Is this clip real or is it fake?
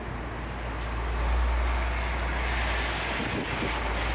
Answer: real